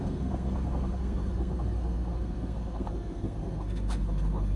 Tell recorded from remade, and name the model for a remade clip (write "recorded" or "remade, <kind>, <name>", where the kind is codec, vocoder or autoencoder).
remade, codec, SNAC